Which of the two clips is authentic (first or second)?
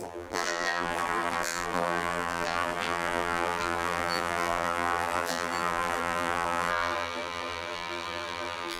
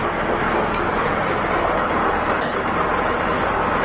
second